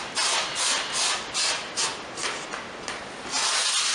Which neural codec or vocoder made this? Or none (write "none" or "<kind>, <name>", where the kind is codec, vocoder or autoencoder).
none